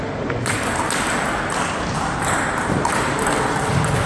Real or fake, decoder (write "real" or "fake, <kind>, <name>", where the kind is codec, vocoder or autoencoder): real